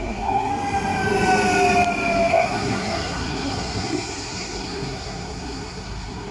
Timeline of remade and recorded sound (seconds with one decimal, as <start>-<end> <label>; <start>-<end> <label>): 0.0-0.5 remade; 0.5-2.3 recorded; 2.3-6.3 remade